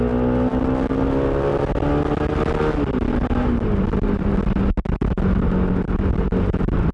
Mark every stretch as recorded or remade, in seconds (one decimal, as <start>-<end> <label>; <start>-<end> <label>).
0.0-6.9 recorded